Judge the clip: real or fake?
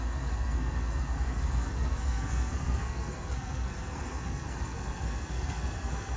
fake